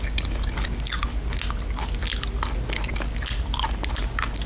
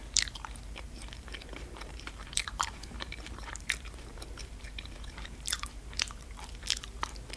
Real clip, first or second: first